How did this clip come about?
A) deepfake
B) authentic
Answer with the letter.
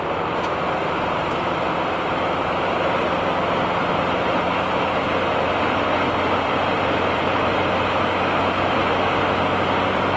B